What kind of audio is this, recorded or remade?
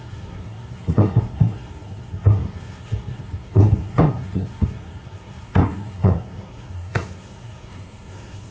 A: remade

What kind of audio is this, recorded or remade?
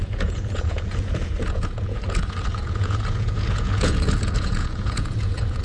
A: remade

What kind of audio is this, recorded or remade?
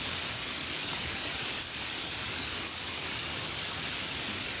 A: remade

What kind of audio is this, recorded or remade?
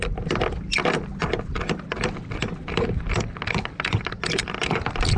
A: recorded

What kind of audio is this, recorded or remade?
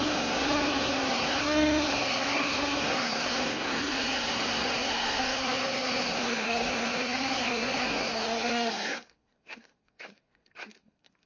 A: remade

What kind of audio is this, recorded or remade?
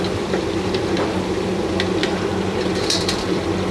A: remade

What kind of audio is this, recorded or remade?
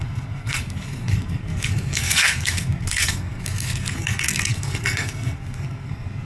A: remade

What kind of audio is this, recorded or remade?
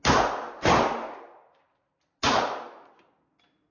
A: recorded